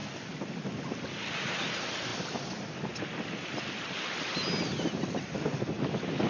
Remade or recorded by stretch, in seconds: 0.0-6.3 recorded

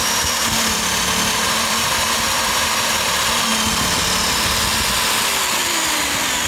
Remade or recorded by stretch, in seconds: 0.0-3.5 remade; 3.5-5.5 recorded; 5.5-6.5 remade